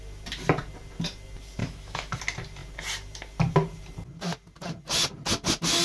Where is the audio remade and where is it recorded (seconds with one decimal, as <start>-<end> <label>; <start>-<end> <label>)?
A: 0.0-1.6 recorded; 1.6-2.2 remade; 2.2-5.8 recorded